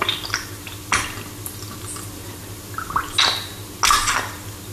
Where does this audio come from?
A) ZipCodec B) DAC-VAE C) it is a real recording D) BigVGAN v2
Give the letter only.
C